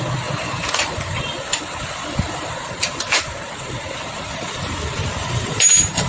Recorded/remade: recorded